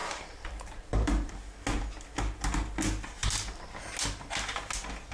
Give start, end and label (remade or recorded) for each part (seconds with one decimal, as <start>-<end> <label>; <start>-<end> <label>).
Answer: 0.0-1.3 remade; 1.3-3.2 recorded; 3.2-3.8 remade; 3.8-5.1 recorded